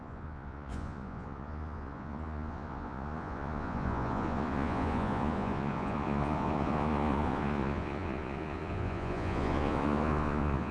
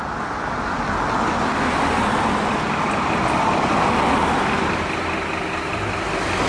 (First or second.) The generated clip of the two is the first